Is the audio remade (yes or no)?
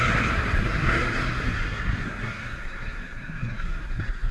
yes